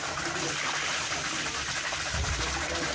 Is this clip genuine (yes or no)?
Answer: yes